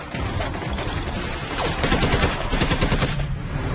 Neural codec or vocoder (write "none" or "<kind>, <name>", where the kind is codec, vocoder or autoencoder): vocoder, BigVGAN v2